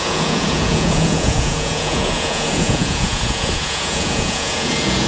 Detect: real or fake fake